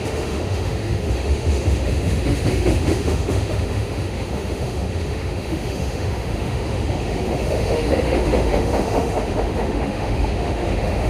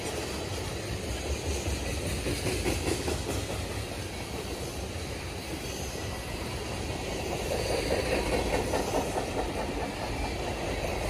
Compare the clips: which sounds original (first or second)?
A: second